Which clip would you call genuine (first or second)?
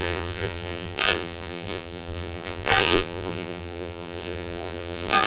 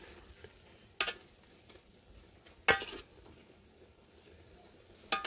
second